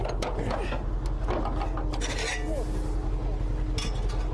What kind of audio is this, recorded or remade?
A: recorded